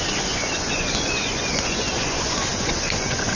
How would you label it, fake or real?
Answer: fake